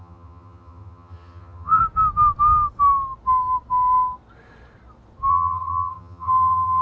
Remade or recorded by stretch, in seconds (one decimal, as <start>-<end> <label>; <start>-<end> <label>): 0.0-1.8 remade; 1.8-5.3 recorded; 5.3-6.8 remade